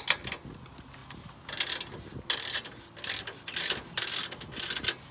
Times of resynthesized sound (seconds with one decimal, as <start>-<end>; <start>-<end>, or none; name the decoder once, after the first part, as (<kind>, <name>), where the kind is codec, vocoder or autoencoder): none